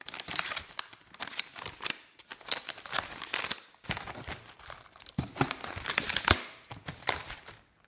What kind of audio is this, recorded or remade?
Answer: remade